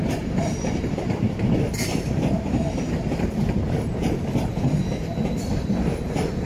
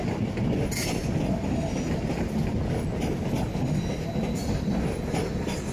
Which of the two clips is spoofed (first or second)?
first